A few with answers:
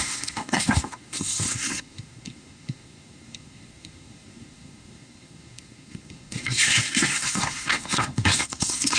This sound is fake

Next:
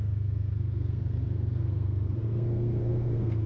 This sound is fake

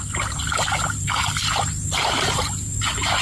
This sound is real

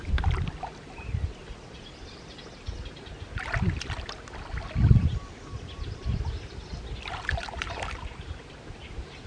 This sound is real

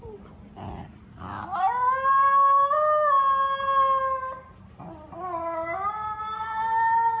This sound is real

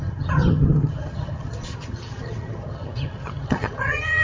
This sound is fake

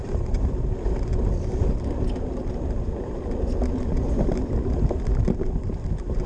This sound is fake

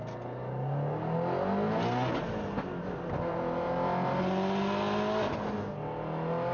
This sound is real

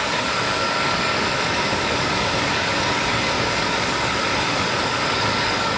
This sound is fake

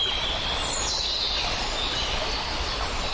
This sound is real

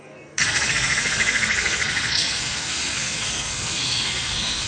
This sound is fake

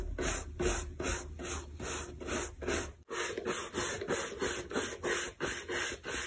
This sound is real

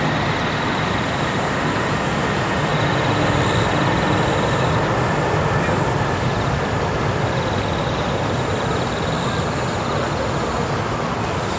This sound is real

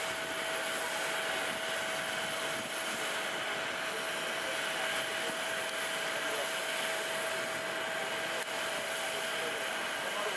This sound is real